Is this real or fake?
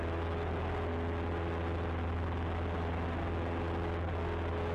real